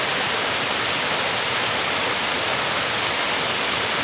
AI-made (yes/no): no